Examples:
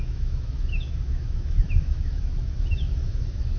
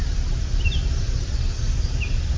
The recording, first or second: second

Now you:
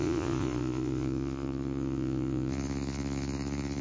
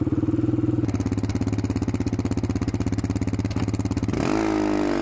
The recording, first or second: second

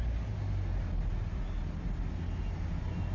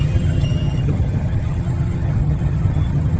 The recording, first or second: first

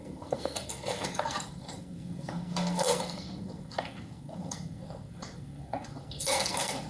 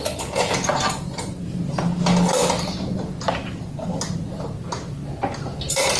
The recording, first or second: second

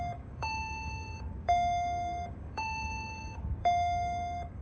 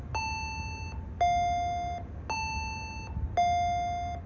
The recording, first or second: second